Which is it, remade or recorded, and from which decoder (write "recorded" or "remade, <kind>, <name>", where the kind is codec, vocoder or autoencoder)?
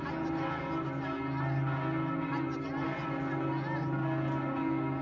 recorded